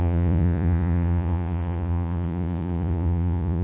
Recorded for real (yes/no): no